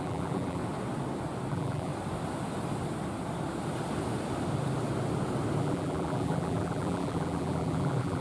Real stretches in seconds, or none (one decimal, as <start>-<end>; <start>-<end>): 0.6-1.5; 1.9-5.6